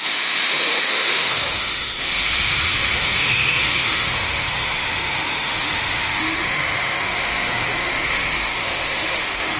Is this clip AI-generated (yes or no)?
yes